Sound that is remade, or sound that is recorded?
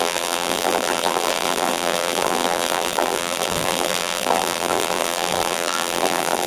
remade